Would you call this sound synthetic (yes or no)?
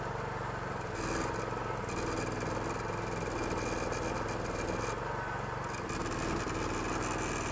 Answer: no